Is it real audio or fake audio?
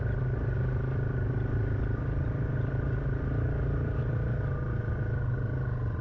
real